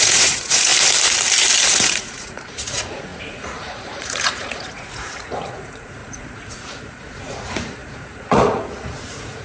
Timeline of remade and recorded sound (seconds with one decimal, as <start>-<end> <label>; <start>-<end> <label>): 0.0-0.7 remade; 0.7-1.7 recorded; 1.7-9.4 remade